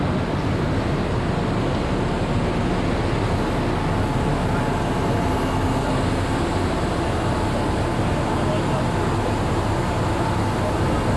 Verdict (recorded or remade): recorded